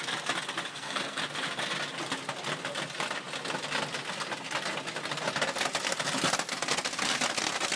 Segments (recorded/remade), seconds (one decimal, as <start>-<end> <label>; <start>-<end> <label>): 0.0-0.7 recorded; 0.7-1.2 remade; 1.2-7.8 recorded